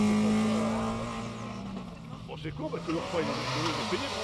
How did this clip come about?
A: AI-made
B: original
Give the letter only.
B